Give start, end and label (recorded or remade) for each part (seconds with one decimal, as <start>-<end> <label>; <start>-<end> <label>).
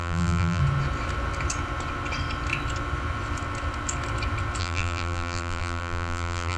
0.0-0.6 remade; 0.6-4.6 recorded; 4.6-6.6 remade